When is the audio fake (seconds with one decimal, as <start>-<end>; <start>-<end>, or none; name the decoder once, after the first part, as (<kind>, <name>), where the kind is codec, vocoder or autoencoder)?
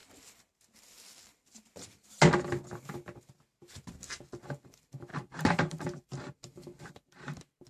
3.9-7.7 (vocoder, BigVGAN v2)